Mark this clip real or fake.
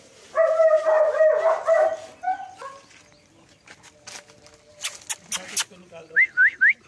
real